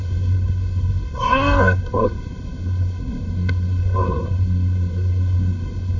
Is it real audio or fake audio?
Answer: fake